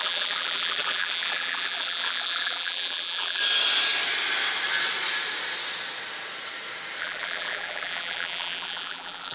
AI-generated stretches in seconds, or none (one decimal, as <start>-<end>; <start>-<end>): 0.0-3.4; 7.0-9.3